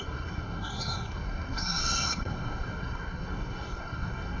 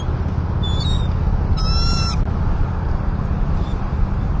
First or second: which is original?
second